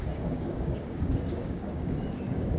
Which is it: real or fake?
fake